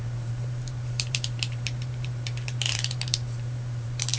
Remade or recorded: remade